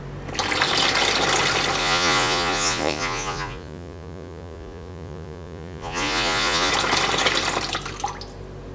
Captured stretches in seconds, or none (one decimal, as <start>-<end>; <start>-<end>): 0.0-1.8; 6.7-8.7